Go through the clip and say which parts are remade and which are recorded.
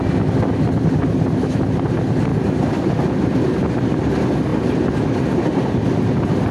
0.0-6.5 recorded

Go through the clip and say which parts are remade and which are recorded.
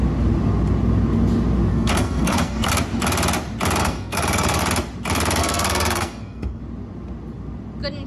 0.0-1.7 recorded; 1.7-2.7 remade; 2.7-3.8 recorded; 3.8-4.6 remade; 4.6-5.4 recorded; 5.4-6.6 remade; 6.6-8.1 recorded